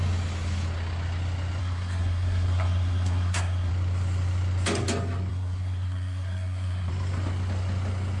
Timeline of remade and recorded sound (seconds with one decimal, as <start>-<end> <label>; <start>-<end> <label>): 0.0-1.6 recorded; 1.6-3.7 remade; 3.7-5.3 recorded; 5.3-6.9 remade; 6.9-8.2 recorded